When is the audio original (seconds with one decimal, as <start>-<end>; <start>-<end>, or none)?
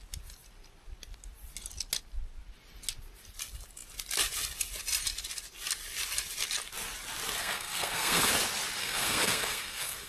0.0-7.4; 8.3-8.8